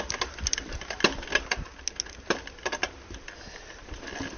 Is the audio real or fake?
real